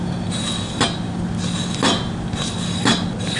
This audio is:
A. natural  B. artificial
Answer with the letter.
A